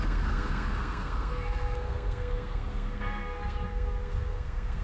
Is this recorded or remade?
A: remade